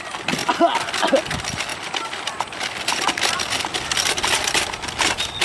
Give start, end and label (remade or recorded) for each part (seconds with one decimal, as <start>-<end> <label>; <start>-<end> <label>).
0.0-1.7 recorded; 1.7-4.9 remade; 4.9-5.4 recorded